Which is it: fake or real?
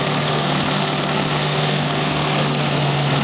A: fake